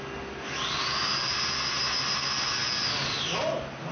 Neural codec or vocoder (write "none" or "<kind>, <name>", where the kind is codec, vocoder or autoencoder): none